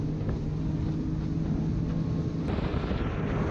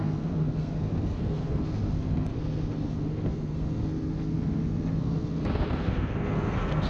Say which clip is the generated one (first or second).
second